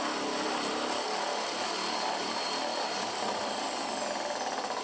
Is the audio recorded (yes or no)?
yes